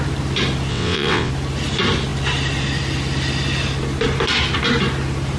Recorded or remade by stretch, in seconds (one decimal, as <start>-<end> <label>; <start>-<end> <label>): 0.0-0.7 recorded; 0.7-1.3 remade; 1.3-5.4 recorded